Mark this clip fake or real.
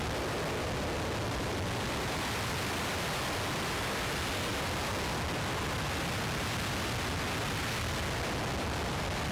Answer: real